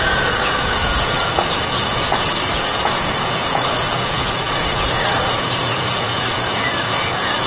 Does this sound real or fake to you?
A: fake